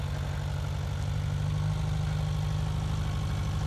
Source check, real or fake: real